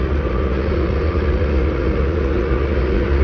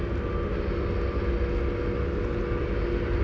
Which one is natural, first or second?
second